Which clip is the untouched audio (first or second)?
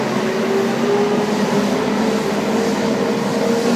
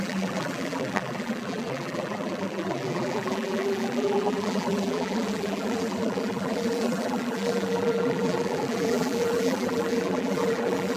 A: first